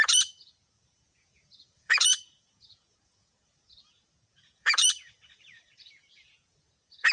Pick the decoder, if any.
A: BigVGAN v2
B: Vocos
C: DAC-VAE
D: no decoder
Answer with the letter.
B